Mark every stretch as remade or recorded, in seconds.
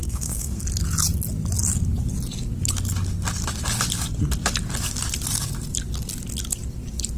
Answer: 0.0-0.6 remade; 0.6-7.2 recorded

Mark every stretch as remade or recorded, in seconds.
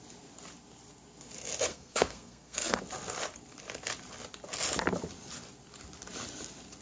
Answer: 0.0-1.7 recorded; 1.7-2.8 remade; 2.8-6.8 recorded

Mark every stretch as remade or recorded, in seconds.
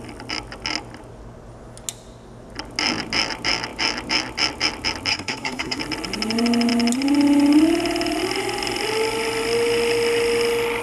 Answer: 0.0-5.1 recorded; 5.1-5.8 remade; 5.8-10.8 recorded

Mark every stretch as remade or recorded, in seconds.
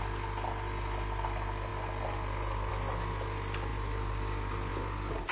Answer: 0.0-5.3 recorded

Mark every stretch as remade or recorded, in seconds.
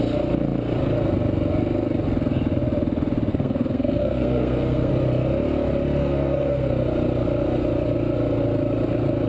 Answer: 0.0-3.3 recorded; 3.3-4.9 remade; 4.9-6.0 recorded; 6.0-6.7 remade; 6.7-9.3 recorded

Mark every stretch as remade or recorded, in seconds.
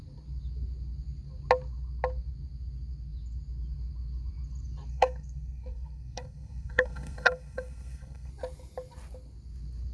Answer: 0.0-4.9 recorded; 4.9-8.3 remade; 8.3-9.9 recorded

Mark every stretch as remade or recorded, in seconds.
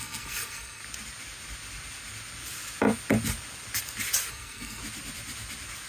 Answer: 0.0-0.8 remade; 0.8-4.3 recorded; 4.3-4.8 remade; 4.8-5.9 recorded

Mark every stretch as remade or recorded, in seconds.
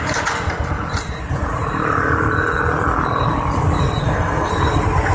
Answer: 0.0-4.0 recorded; 4.0-4.5 remade; 4.5-5.1 recorded